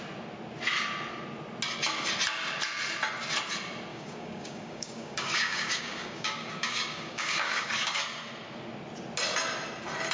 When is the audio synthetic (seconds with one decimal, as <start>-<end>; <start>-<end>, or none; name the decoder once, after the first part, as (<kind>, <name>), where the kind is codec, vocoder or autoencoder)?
3.9-8.0 (codec, DAC)

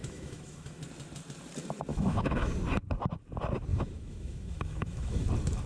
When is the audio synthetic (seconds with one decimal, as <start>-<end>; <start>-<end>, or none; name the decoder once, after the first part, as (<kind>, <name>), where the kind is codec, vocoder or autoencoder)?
0.0-0.8 (autoencoder, DAC-VAE); 1.9-2.5; 3.7-5.3

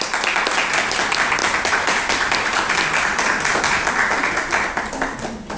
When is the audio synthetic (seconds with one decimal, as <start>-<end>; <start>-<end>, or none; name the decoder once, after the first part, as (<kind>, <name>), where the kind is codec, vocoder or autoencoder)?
none